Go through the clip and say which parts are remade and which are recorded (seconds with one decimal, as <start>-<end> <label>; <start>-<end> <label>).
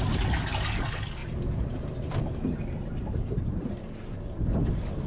0.0-1.2 recorded; 1.2-3.7 remade; 3.7-5.1 recorded